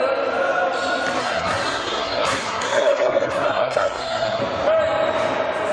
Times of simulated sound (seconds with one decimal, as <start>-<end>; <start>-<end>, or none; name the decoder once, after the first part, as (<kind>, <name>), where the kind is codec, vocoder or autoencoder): 1.2-4.4 (codec, SNAC)